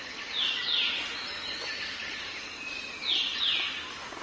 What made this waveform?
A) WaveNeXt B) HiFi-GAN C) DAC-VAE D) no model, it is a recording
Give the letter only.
D